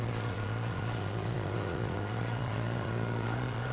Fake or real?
fake